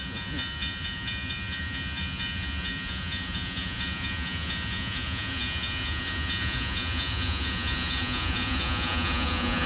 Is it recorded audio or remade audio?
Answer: remade